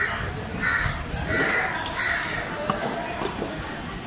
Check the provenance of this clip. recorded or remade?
recorded